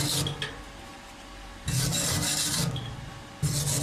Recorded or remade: recorded